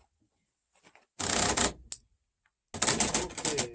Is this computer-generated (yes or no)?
no